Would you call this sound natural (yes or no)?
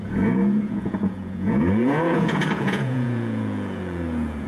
no